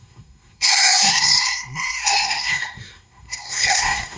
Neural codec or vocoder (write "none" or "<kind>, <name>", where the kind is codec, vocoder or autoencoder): codec, SNAC